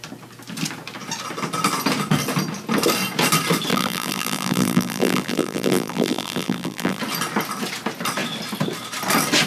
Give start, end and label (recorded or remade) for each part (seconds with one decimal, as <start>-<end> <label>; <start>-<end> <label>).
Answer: 0.0-3.7 recorded; 3.7-7.0 remade; 7.0-9.5 recorded